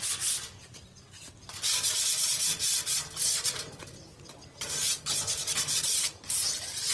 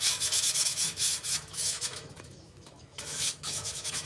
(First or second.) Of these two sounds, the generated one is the second